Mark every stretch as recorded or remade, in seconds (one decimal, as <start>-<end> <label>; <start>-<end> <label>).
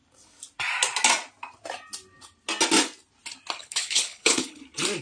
0.0-3.6 recorded; 3.6-4.6 remade; 4.6-5.0 recorded